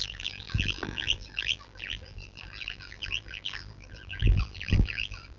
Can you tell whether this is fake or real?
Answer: fake